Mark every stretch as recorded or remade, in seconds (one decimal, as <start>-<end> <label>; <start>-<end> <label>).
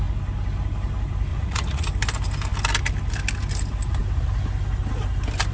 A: 0.0-1.3 recorded; 1.3-1.9 remade; 1.9-5.5 recorded